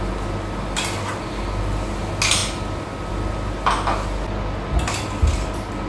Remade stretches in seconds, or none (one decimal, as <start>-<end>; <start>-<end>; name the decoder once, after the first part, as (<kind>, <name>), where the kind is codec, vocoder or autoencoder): none